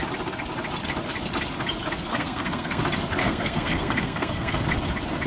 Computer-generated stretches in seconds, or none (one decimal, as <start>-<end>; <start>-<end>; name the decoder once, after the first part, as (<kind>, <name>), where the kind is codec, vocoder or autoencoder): 2.1-2.8 (codec, SNAC); 3.2-4.6